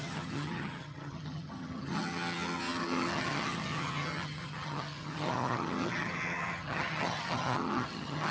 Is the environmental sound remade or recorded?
remade